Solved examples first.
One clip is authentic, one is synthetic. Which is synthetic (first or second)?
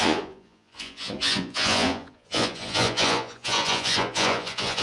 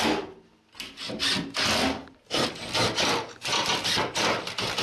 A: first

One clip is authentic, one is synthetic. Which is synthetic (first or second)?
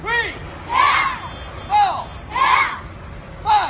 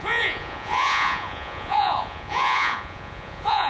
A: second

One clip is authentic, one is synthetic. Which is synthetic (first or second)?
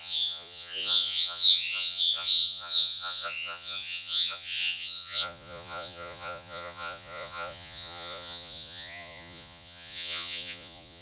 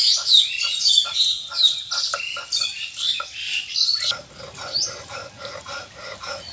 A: first